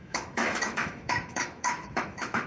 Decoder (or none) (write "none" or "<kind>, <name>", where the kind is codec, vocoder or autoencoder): autoencoder, DAC-VAE